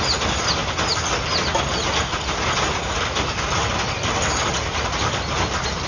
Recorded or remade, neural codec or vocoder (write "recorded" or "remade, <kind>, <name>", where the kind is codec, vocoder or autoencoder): recorded